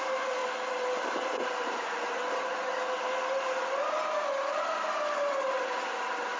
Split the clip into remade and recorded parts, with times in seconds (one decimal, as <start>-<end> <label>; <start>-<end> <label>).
0.0-6.4 recorded